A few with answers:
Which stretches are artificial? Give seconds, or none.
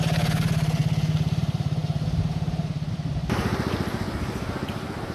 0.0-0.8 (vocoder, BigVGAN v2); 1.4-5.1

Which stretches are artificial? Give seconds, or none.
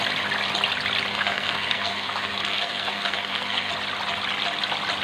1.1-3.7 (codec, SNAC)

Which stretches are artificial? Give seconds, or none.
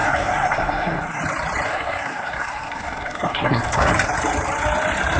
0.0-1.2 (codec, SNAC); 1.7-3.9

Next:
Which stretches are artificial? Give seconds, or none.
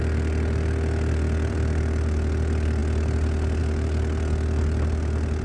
0.0-2.8 (vocoder, BigVGAN v2); 3.6-5.4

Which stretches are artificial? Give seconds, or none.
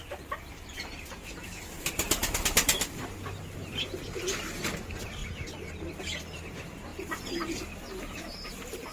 6.9-8.3 (vocoder, BigVGAN v2)